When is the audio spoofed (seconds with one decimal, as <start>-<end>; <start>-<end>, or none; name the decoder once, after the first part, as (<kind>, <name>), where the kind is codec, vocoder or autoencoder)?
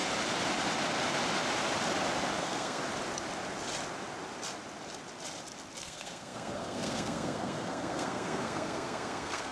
2.4-2.8 (codec, SNAC); 5.8-9.5